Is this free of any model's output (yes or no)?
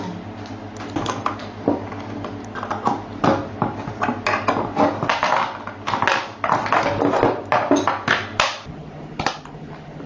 yes